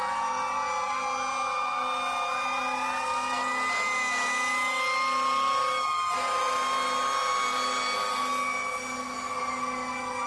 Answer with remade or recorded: recorded